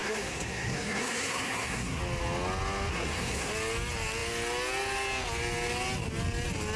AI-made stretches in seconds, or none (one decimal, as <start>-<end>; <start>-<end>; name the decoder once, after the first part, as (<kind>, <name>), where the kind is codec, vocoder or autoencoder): 0.0-2.0 (codec, SNAC); 2.9-3.5